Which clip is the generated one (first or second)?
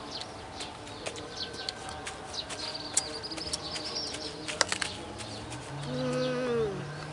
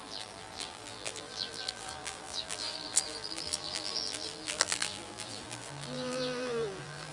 second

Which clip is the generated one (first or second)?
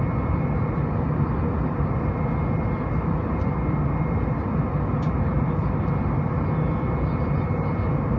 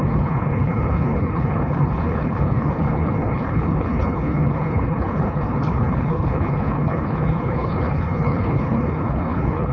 second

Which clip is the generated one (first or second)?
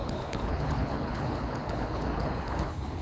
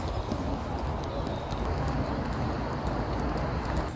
first